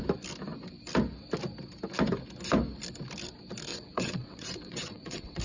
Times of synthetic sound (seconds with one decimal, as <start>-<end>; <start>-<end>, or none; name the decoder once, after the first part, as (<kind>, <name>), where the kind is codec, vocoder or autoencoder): 3.7-5.4 (vocoder, WaveNeXt)